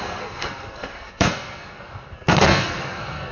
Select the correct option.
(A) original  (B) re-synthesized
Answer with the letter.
B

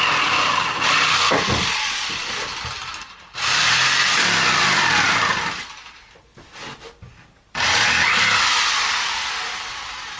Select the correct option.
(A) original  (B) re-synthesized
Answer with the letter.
A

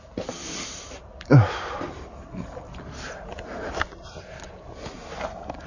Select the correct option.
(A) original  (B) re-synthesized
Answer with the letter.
A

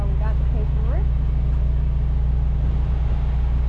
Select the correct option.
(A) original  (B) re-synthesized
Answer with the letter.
A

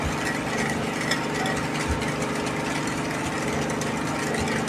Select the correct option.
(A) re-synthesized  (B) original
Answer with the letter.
B